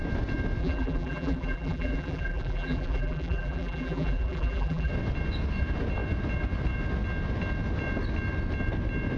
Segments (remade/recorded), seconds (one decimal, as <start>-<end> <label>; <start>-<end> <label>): 0.0-0.6 recorded; 0.6-4.9 remade; 4.9-9.2 recorded

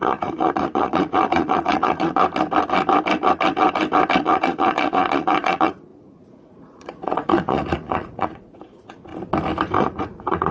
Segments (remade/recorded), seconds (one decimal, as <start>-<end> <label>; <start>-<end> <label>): 0.0-2.2 remade; 2.2-4.2 recorded; 4.2-9.1 remade; 9.1-9.8 recorded; 9.8-10.5 remade

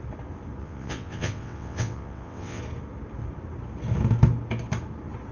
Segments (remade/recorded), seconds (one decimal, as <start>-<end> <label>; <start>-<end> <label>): 0.0-0.6 recorded; 0.6-2.6 remade; 2.6-5.3 recorded